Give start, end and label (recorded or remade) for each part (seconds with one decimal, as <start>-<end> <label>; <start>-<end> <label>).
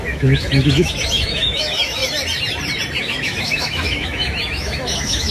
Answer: 0.0-2.0 remade; 2.0-3.0 recorded; 3.0-5.3 remade